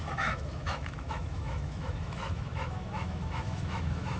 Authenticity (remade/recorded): remade